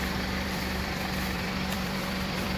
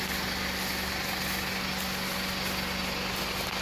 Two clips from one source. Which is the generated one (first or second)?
first